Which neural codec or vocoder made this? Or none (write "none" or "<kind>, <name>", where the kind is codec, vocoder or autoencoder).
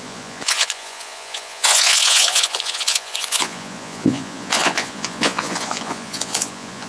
vocoder, Vocos